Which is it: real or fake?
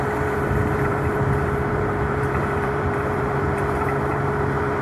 fake